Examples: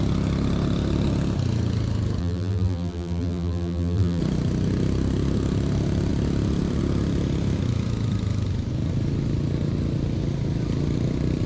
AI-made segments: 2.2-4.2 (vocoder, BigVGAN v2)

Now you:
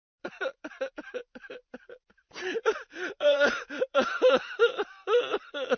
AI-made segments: 0.0-5.8 (vocoder, BigVGAN v2)

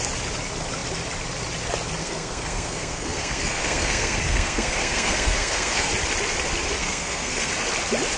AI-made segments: 2.0-5.9 (codec, SNAC); 6.8-7.5

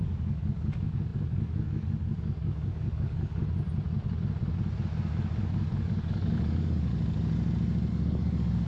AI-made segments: 0.0-3.4 (codec, DAC); 5.4-6.9; 7.9-8.7

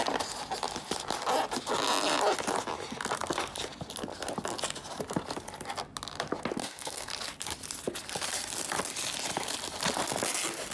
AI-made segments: 6.6-7.1 (codec, SNAC)